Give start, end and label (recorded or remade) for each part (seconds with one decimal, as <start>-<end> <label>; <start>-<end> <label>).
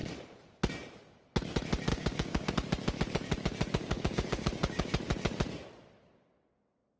0.0-1.9 recorded; 1.9-2.5 remade; 2.5-3.8 recorded; 3.8-4.9 remade; 4.9-7.0 recorded